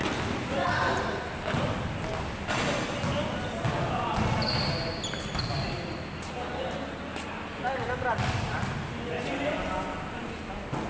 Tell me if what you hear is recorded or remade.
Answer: recorded